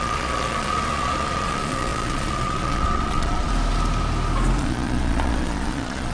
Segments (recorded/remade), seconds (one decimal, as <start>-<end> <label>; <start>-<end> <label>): 0.0-3.5 remade; 3.5-4.6 recorded; 4.6-6.1 remade